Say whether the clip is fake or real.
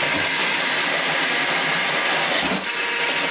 real